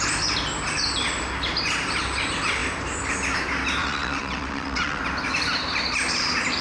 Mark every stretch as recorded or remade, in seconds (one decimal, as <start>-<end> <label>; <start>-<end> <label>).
0.0-3.8 recorded; 3.8-5.0 remade; 5.0-6.6 recorded